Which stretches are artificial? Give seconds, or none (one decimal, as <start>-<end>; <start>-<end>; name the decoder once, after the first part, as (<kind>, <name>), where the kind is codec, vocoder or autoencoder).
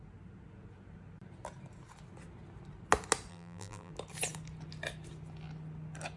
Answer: 3.3-3.9 (vocoder, BigVGAN v2)